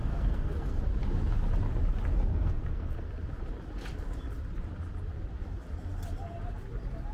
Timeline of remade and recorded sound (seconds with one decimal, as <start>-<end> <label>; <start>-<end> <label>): 0.0-0.8 remade; 0.8-2.3 recorded; 2.3-3.1 remade; 3.1-7.1 recorded